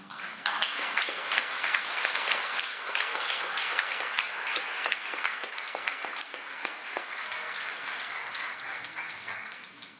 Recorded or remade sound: remade